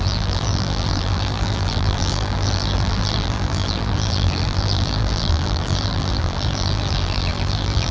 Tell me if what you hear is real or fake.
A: fake